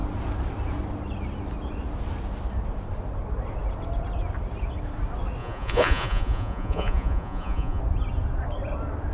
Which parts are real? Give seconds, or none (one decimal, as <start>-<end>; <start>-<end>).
0.0-5.4; 7.8-9.1